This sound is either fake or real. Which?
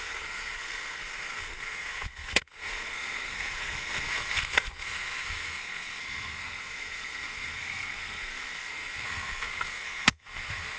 fake